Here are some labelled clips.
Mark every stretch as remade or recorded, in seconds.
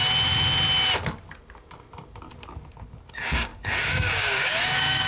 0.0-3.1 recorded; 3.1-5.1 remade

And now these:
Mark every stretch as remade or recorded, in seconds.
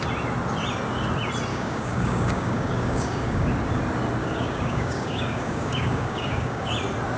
0.0-1.5 recorded; 1.5-3.5 remade; 3.5-4.2 recorded; 4.2-6.7 remade; 6.7-7.2 recorded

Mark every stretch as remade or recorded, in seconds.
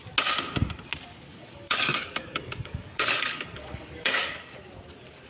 0.0-1.3 recorded; 1.3-4.5 remade; 4.5-5.3 recorded